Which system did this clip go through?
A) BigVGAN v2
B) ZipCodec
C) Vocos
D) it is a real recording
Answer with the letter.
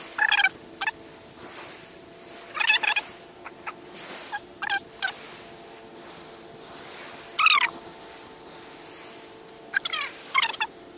D